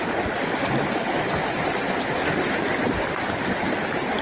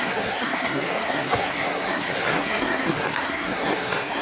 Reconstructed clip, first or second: second